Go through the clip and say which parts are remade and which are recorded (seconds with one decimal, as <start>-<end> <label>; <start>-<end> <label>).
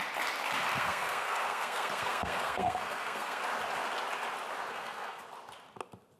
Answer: 0.0-0.7 recorded; 0.7-3.4 remade; 3.4-4.7 recorded; 4.7-5.2 remade; 5.2-6.2 recorded